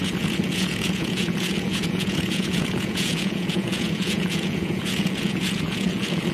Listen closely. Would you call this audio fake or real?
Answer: fake